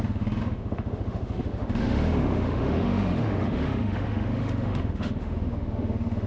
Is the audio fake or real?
fake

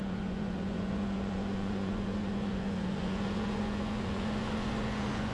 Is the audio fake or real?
fake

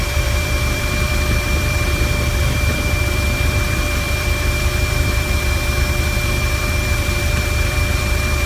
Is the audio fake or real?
fake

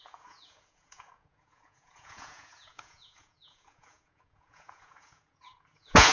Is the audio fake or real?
fake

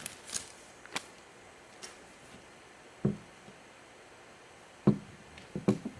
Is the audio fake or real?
real